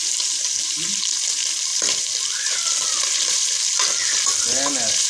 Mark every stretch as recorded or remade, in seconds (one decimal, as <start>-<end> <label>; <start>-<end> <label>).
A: 0.0-5.1 recorded